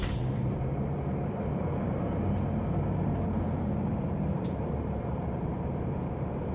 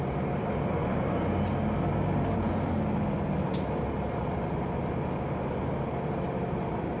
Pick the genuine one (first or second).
second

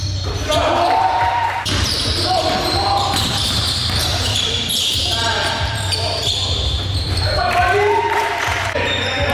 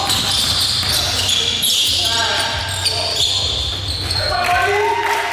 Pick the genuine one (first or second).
second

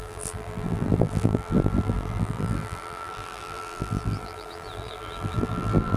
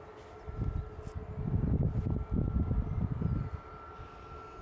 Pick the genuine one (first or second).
second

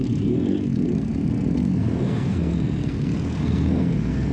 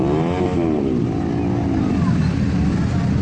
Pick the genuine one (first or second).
second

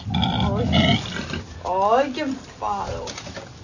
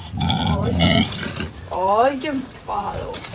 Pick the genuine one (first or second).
first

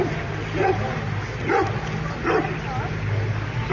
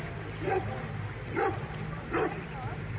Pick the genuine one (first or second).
first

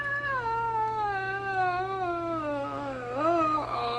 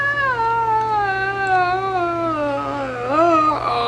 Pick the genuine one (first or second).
second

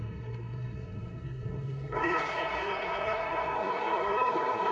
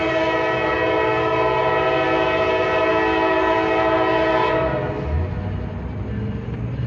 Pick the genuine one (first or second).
second